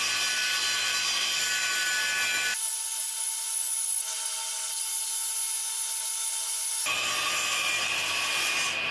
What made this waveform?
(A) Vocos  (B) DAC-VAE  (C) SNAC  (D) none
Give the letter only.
D